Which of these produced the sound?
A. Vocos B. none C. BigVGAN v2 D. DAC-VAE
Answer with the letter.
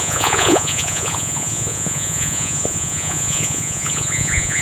A